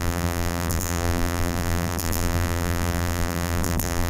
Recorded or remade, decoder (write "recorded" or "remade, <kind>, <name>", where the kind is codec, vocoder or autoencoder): remade, vocoder, BigVGAN v2